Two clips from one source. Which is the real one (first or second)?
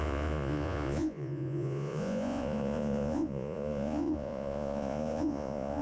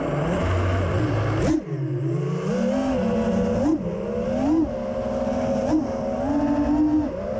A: second